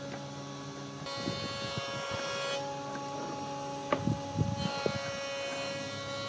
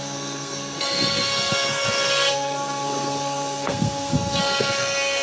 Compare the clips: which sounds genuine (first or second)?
first